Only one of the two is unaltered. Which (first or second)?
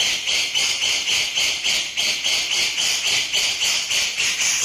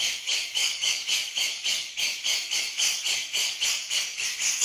first